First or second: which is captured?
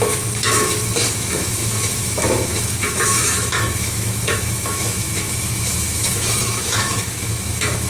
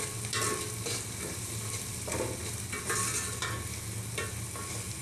second